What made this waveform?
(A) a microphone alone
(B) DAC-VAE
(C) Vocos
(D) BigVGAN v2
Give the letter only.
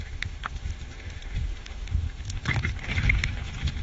B